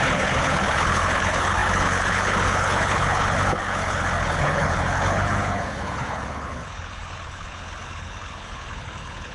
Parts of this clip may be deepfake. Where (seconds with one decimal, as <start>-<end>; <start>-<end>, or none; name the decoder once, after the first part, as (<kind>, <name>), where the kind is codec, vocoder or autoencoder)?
0.0-9.3 (codec, HILCodec)